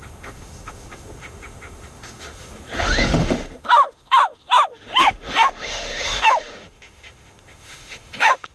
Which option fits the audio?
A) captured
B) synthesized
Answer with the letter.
B